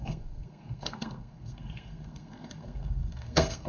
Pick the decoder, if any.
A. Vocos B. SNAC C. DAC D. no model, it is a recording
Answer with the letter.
B